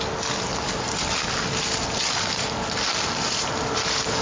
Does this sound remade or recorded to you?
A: recorded